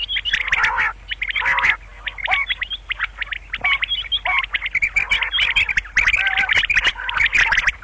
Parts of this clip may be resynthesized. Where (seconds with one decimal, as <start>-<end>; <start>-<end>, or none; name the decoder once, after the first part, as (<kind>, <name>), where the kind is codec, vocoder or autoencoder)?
none